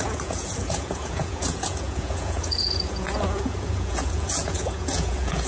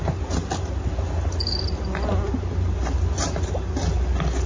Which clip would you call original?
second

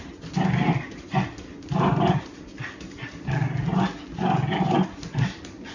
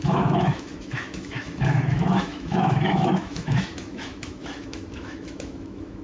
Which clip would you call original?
first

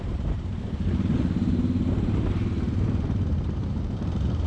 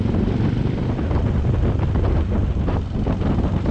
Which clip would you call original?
second